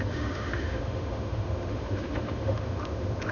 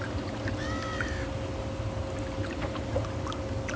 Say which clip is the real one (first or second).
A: second